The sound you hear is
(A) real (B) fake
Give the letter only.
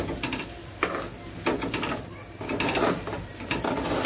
B